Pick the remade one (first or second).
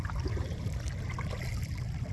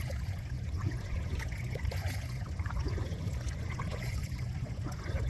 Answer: second